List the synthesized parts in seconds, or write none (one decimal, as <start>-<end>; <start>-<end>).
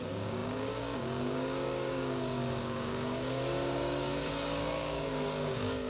0.0-5.9